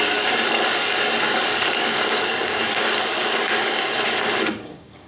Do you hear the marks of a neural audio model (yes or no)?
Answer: yes